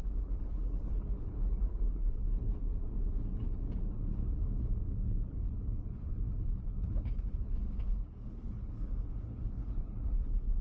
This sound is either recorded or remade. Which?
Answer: remade